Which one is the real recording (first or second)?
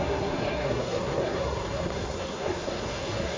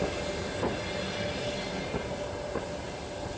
second